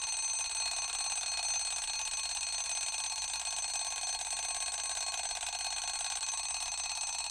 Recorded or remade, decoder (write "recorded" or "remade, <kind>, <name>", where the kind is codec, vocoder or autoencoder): recorded